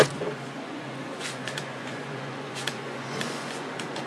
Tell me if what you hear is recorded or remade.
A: remade